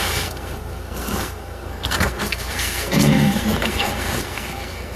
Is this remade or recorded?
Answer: remade